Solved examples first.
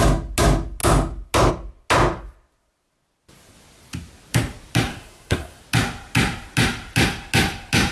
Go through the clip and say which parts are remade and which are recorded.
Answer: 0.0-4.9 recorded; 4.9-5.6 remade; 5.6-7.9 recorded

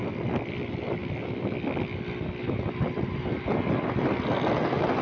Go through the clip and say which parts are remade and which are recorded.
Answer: 0.0-5.0 recorded

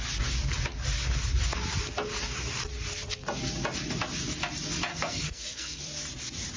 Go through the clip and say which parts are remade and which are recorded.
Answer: 0.0-4.9 recorded; 4.9-5.8 remade; 5.8-6.6 recorded

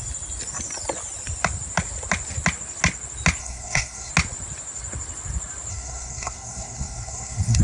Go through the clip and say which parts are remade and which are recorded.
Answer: 0.0-3.4 recorded; 3.4-4.1 remade; 4.1-5.7 recorded; 5.7-7.6 remade